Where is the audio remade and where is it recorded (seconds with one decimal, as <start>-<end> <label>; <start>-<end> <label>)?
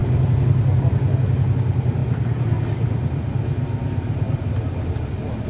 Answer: 0.0-5.5 recorded